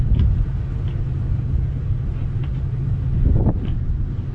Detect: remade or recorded recorded